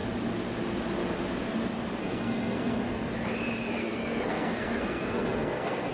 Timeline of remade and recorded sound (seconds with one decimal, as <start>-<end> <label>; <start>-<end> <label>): 0.0-2.0 recorded; 2.0-3.1 remade; 3.1-3.8 recorded; 3.8-5.9 remade

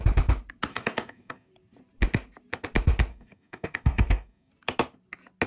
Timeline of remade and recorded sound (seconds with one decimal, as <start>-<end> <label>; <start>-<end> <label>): 0.0-0.7 recorded; 0.7-1.5 remade; 1.5-3.1 recorded; 3.1-4.5 remade; 4.5-5.5 recorded

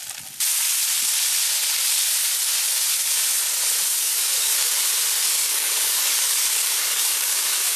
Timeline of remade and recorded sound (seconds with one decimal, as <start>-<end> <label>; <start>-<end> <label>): 0.0-3.9 recorded; 3.9-4.7 remade; 4.7-5.2 recorded; 5.2-7.8 remade

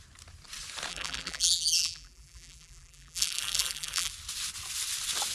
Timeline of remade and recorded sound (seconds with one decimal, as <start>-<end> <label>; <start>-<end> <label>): 0.0-0.9 recorded; 0.9-4.1 remade; 4.1-5.3 recorded